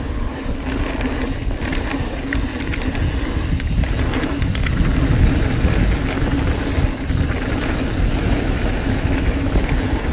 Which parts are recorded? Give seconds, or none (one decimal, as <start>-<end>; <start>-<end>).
0.0-8.2; 9.6-10.1